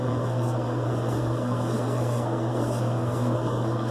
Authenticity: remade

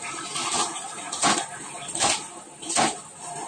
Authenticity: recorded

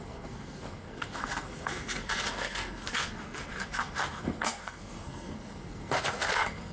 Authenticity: remade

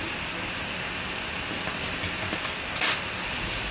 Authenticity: recorded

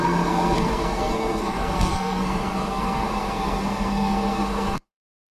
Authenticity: remade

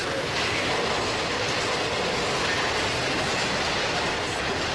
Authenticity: recorded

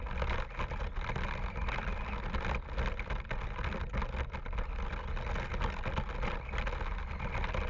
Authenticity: recorded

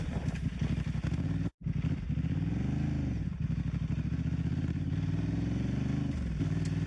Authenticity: recorded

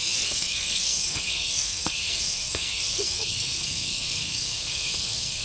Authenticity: remade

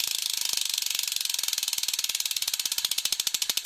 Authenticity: recorded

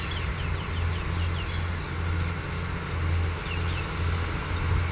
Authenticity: recorded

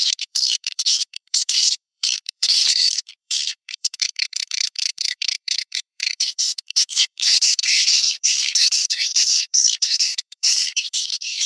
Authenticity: remade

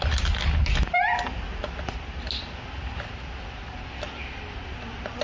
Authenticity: recorded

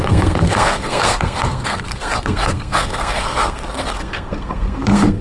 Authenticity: remade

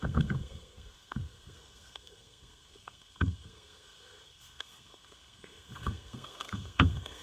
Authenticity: remade